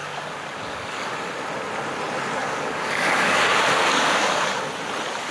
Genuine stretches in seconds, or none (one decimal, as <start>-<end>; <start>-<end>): 1.1-2.4; 4.6-5.3